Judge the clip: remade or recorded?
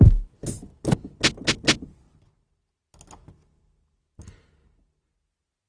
recorded